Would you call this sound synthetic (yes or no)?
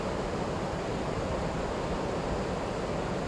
no